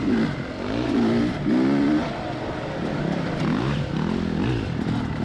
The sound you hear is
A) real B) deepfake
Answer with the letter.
A